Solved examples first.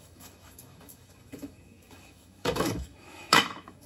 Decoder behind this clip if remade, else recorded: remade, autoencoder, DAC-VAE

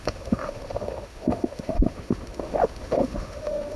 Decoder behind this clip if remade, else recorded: remade, autoencoder, DAC-VAE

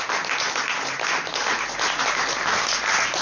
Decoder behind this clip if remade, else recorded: recorded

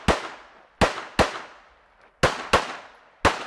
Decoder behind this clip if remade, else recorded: recorded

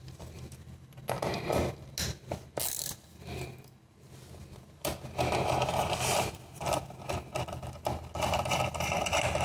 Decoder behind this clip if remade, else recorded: recorded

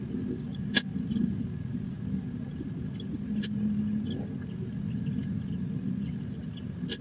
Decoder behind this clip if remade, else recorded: recorded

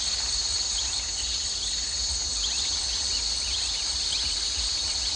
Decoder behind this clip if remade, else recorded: recorded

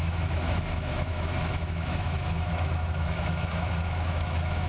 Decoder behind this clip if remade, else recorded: remade, autoencoder, DAC-VAE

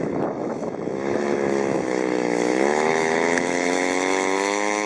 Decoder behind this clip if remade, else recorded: remade, autoencoder, DAC-VAE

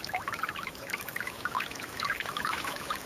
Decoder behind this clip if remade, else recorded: remade, autoencoder, DAC-VAE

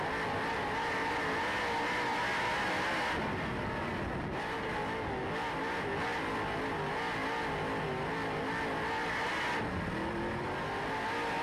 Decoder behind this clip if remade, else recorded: recorded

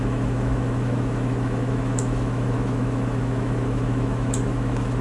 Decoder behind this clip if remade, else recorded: remade, autoencoder, DAC-VAE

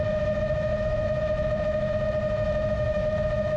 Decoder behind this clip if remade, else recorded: remade, autoencoder, DAC-VAE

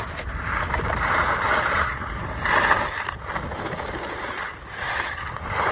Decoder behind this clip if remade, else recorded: recorded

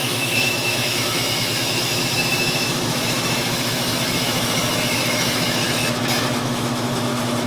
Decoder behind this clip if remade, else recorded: remade, autoencoder, DAC-VAE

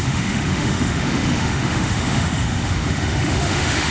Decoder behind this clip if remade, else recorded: remade, autoencoder, DAC-VAE